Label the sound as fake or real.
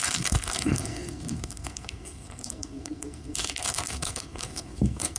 fake